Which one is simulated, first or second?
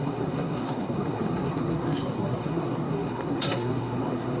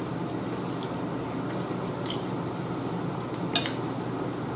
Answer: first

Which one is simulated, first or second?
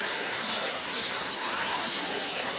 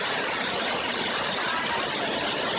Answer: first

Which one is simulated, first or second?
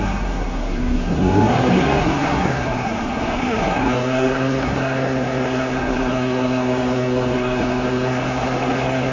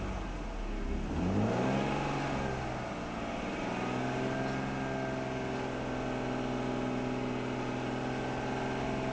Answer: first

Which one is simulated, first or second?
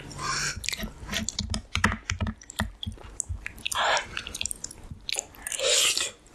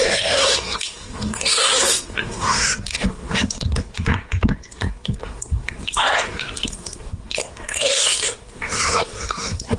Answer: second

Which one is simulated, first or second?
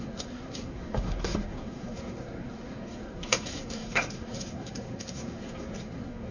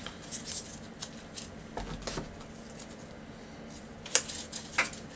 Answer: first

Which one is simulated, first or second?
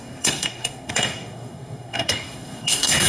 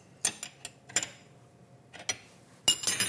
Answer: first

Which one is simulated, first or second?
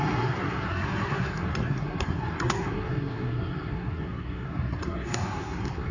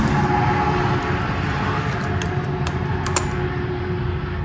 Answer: first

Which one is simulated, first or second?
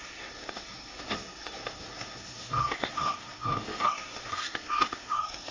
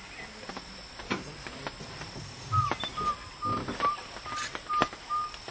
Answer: first